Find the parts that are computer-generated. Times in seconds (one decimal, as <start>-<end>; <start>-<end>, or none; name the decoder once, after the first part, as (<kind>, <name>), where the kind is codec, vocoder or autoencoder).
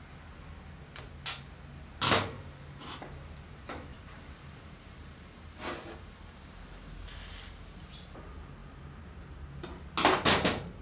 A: 3.9-6.6 (vocoder, BigVGAN v2)